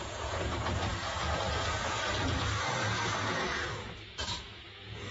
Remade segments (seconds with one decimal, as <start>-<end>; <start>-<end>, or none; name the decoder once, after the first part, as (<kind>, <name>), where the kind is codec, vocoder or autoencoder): 0.0-5.1 (vocoder, Vocos)

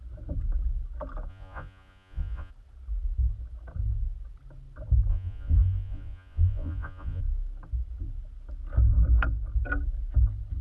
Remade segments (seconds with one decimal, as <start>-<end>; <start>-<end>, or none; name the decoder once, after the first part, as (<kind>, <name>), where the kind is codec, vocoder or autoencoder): 1.3-2.5 (vocoder, Vocos); 5.1-7.2

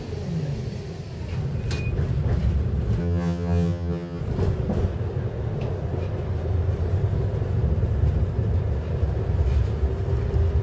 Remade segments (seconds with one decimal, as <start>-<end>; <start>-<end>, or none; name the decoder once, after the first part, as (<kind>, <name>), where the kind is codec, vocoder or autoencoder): 3.0-4.2 (vocoder, HiFi-GAN)